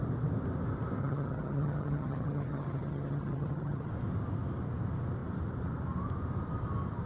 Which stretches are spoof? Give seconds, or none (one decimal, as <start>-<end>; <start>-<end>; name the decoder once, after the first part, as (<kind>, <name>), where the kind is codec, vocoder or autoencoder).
1.0-3.9 (vocoder, HiFi-GAN)